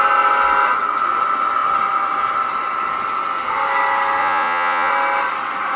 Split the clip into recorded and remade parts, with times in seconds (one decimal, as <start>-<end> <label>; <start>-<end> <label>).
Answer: 0.0-4.2 recorded; 4.2-4.9 remade; 4.9-5.8 recorded